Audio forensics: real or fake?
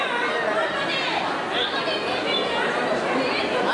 real